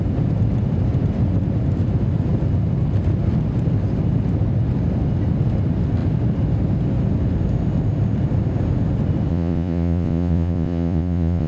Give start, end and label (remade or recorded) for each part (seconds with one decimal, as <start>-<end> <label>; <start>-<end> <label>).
0.0-9.3 recorded; 9.3-11.5 remade